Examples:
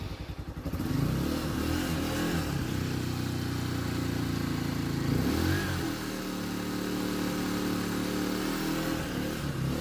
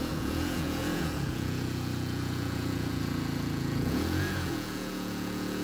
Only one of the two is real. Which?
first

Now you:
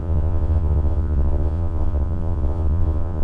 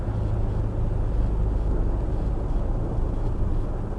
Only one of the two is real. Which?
second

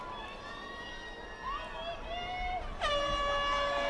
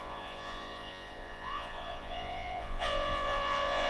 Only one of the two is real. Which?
first